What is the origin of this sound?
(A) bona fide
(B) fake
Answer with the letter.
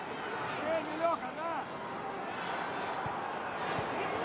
A